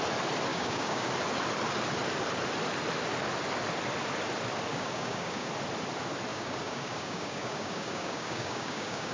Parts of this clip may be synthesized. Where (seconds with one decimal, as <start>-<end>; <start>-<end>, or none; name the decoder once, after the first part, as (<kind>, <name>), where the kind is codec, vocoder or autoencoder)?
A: 0.5-1.1 (codec, DAC); 4.7-5.5; 6.3-9.1